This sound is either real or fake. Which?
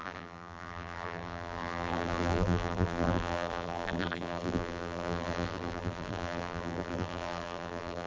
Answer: fake